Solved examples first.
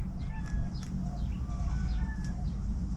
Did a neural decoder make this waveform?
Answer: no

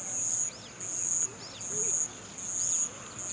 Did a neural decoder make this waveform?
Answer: no